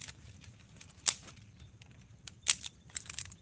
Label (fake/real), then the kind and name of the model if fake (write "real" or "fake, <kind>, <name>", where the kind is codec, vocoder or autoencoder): fake, vocoder, BigVGAN v2